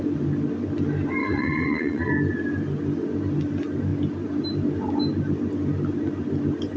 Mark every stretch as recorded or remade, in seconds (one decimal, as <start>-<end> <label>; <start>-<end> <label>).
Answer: 0.0-1.2 recorded; 1.2-2.1 remade; 2.1-6.8 recorded